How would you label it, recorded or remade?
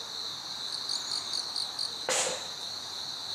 recorded